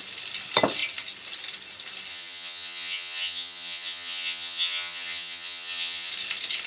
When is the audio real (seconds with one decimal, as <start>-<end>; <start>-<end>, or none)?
0.0-2.1; 6.1-6.7